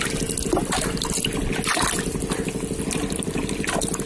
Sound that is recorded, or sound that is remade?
recorded